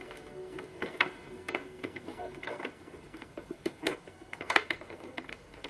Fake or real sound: fake